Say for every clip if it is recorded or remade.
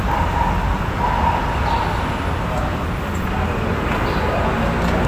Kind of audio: recorded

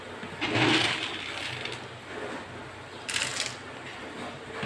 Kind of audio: recorded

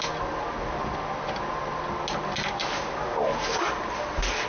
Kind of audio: recorded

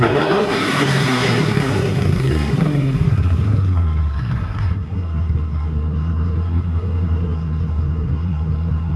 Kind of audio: remade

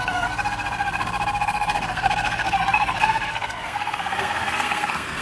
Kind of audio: remade